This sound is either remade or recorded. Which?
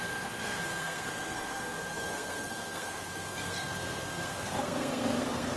remade